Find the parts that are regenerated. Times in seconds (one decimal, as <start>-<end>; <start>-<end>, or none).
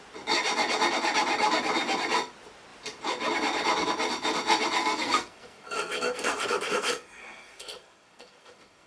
4.8-8.9